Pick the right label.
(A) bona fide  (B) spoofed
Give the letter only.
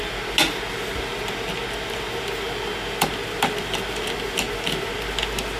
A